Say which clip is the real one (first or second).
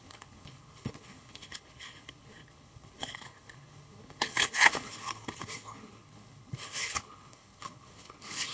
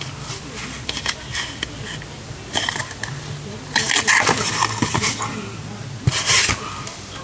second